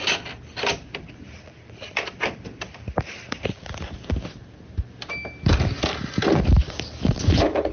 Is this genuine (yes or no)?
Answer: yes